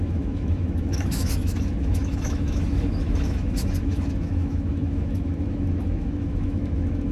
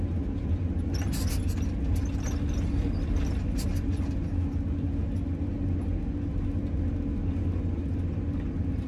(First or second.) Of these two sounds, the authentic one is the second